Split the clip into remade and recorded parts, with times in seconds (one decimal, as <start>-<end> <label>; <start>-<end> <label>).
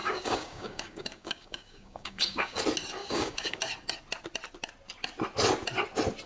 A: 0.0-2.6 remade; 2.6-3.0 recorded; 3.0-3.6 remade; 3.6-6.3 recorded